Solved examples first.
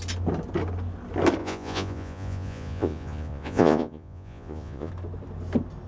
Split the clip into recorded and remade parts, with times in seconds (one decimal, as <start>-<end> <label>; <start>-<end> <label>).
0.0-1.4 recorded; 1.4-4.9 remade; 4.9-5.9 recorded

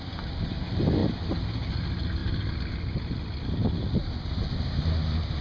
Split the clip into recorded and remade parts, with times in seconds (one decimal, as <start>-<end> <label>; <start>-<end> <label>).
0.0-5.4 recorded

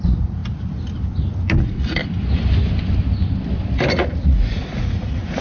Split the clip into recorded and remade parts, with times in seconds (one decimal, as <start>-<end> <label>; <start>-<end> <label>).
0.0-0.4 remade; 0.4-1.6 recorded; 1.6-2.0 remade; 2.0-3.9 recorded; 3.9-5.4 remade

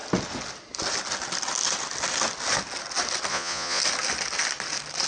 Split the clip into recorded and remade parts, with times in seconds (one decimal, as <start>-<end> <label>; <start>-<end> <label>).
0.0-3.3 recorded; 3.3-3.8 remade; 3.8-5.1 recorded

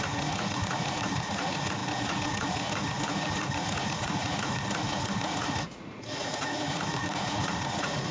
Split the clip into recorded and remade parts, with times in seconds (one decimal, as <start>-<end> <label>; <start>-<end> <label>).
0.0-8.1 remade

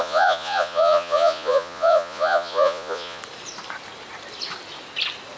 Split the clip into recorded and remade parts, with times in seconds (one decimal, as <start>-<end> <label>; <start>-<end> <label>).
0.0-3.2 remade; 3.2-5.4 recorded